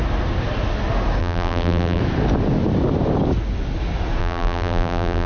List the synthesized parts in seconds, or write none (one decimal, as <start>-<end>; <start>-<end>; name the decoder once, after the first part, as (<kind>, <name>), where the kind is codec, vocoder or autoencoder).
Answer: 1.2-2.0 (vocoder, BigVGAN v2); 4.2-5.3